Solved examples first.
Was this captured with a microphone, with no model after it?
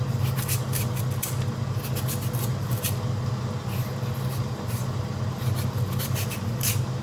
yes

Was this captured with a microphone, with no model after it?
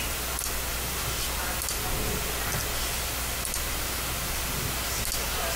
yes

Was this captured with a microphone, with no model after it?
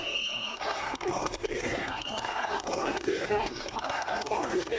no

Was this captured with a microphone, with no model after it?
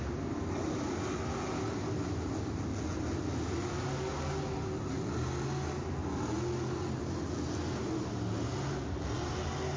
yes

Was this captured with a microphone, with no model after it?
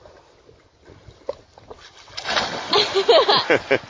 yes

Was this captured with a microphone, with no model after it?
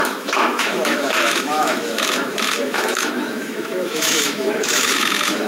no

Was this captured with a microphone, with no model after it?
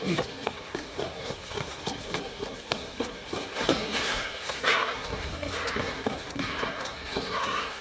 no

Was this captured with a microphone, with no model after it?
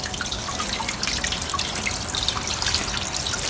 yes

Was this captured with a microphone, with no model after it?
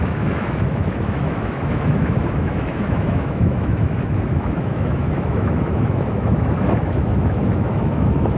no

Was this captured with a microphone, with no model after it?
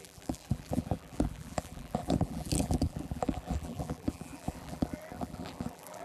no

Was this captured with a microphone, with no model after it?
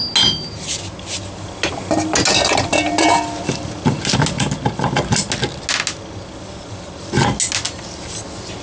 yes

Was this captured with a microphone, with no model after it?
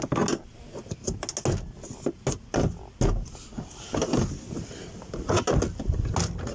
yes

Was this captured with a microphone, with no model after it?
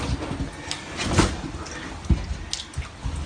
yes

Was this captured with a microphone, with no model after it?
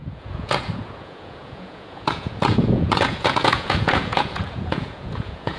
no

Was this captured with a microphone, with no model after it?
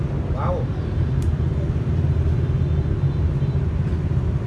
yes